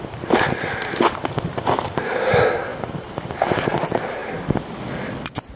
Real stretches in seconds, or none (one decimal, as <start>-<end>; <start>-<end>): 0.0-2.7; 3.3-5.6